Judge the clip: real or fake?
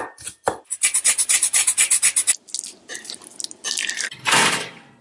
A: real